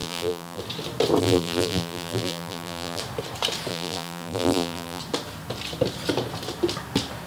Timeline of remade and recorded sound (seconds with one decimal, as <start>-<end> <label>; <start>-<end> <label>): 0.0-0.6 remade; 0.6-1.2 recorded; 1.2-3.0 remade; 3.0-3.7 recorded; 3.7-5.0 remade; 5.0-7.3 recorded